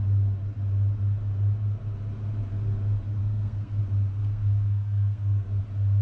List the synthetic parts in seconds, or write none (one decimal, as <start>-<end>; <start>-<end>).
3.2-3.8; 4.2-5.6